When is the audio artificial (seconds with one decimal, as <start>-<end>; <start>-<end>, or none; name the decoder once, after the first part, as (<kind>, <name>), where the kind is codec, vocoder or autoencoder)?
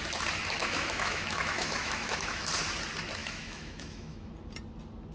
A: 0.6-2.5 (autoencoder, DAC-VAE); 3.2-4.3